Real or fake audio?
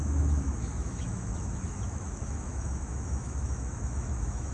fake